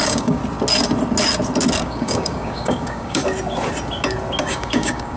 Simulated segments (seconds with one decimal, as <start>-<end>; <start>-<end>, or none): 0.0-0.4; 1.8-3.2; 4.4-5.2